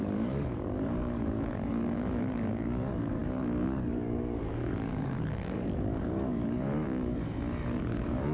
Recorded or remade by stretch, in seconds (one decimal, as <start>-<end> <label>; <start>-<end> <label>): 0.0-7.2 remade; 7.2-7.8 recorded; 7.8-8.3 remade